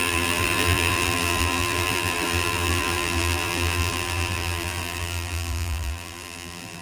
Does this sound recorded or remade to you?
remade